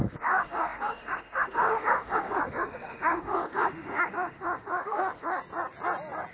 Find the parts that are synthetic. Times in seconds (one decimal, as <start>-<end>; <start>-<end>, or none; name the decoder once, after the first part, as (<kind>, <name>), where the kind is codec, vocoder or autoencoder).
0.0-5.4 (autoencoder, DAC-VAE)